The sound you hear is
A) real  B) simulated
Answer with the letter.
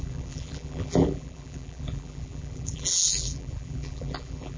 B